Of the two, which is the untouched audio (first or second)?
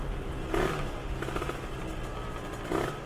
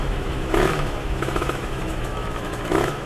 first